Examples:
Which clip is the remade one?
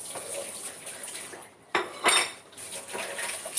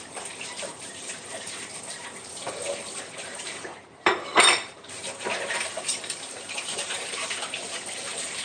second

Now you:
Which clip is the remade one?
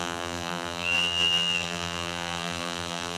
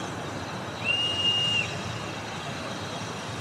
first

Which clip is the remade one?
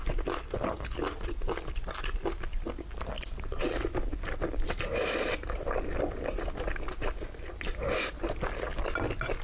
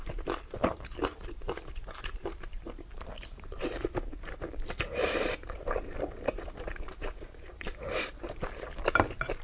second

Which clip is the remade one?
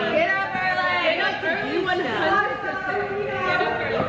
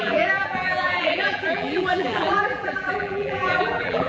second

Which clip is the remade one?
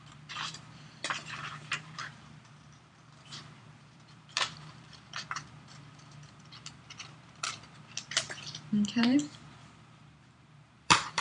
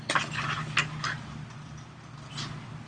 first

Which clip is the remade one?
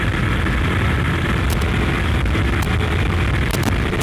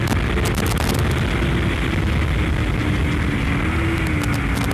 first